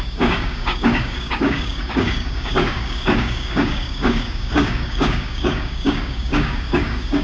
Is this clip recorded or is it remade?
remade